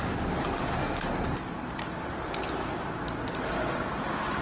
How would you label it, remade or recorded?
recorded